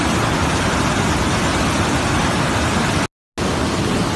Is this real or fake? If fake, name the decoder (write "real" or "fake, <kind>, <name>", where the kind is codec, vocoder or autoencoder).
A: real